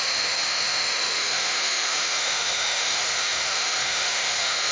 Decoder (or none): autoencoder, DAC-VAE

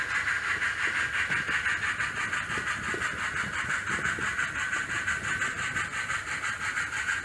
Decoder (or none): none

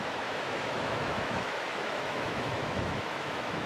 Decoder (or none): autoencoder, DAC-VAE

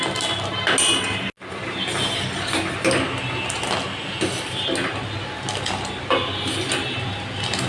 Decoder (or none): none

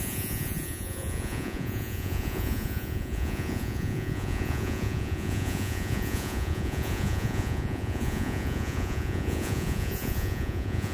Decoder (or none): vocoder, Vocos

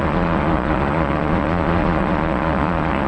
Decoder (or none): vocoder, Vocos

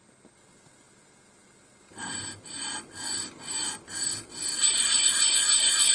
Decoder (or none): none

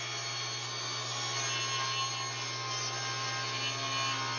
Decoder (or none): none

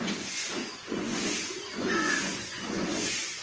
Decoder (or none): vocoder, Vocos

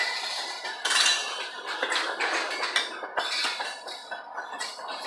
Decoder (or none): none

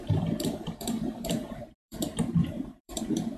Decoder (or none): vocoder, BigVGAN v2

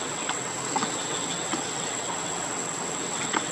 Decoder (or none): vocoder, WaveNeXt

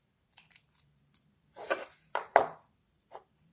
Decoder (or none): vocoder, BigVGAN v2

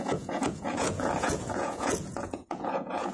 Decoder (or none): vocoder, Vocos